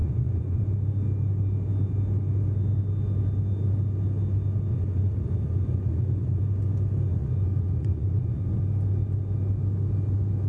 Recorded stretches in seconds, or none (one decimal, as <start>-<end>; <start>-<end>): 0.6-4.7; 6.4-7.1; 8.6-10.5